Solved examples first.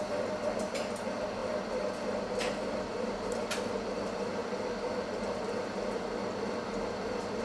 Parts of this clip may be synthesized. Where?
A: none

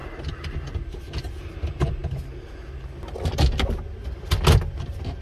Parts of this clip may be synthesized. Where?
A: 0.0-0.6

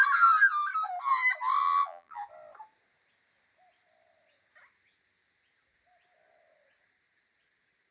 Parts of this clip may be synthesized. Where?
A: 1.6-2.2

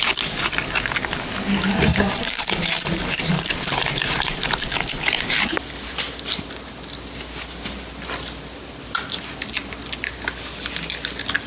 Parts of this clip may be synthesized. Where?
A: 1.9-5.2

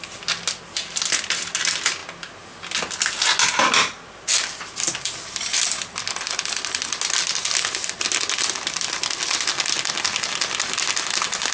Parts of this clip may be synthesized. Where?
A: none